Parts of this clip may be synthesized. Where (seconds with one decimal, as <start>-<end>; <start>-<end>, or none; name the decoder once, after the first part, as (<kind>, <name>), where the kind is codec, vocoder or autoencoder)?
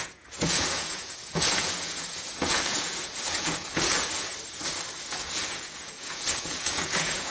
0.0-4.3 (vocoder, Vocos); 5.0-7.3